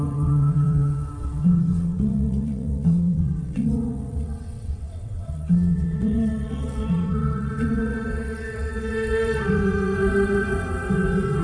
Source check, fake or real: fake